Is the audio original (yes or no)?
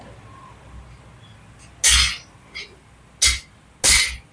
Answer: yes